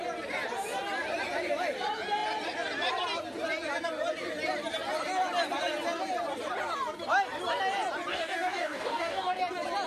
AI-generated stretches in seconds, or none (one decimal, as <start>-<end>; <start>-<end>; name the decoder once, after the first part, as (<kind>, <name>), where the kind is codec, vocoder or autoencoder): 8.1-9.4 (codec, DAC)